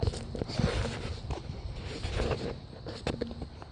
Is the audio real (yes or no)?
yes